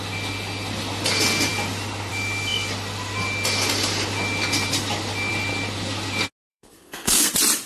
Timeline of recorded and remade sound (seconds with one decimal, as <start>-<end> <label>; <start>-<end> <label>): 0.0-6.5 recorded; 6.5-7.3 remade; 7.3-7.7 recorded